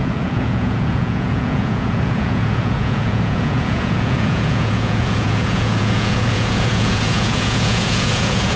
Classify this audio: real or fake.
fake